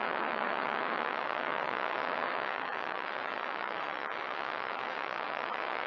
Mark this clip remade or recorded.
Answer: remade